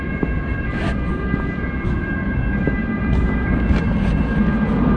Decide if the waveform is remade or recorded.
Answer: recorded